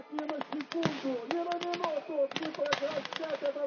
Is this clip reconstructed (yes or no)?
no